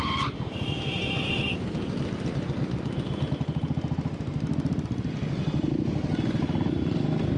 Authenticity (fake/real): real